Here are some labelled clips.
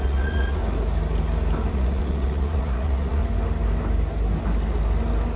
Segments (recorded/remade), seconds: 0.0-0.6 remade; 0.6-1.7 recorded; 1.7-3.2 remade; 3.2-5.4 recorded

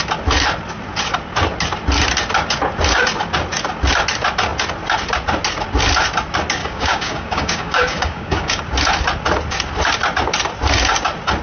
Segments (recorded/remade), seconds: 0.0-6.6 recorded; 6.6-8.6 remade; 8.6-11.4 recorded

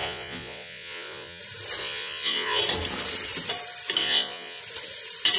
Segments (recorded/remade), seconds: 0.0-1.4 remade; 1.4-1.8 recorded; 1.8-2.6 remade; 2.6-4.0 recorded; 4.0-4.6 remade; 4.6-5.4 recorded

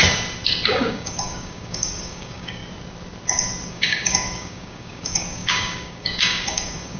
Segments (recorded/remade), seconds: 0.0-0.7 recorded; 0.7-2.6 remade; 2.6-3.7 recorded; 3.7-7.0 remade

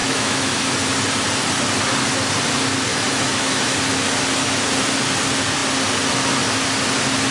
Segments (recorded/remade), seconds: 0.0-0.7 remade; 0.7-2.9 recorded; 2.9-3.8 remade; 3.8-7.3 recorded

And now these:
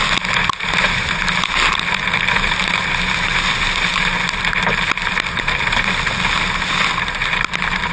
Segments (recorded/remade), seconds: 0.0-7.9 recorded

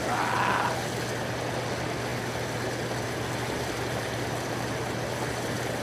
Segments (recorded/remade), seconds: 0.0-5.8 recorded

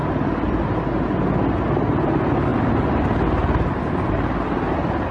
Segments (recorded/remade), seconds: 0.0-5.1 recorded